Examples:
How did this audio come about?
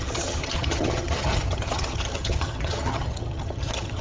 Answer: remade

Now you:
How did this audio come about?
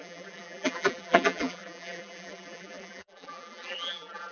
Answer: remade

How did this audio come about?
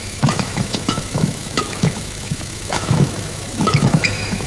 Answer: remade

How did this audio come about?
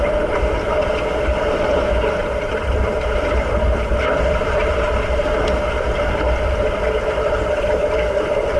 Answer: recorded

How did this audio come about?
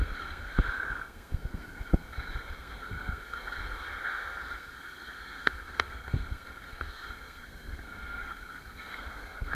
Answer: remade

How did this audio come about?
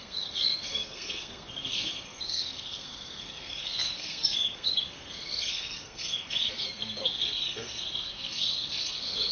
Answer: remade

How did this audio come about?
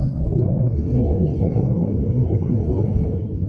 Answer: remade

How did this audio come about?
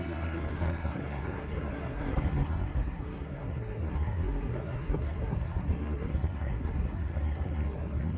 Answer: remade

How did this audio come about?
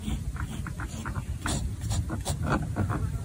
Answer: recorded